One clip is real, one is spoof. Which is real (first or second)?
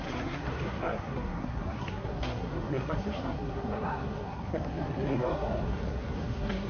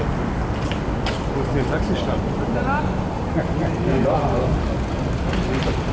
second